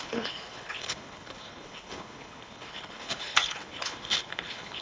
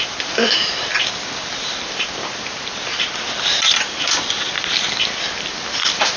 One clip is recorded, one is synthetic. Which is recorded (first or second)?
second